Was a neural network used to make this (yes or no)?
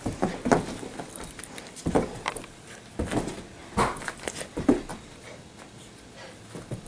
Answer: no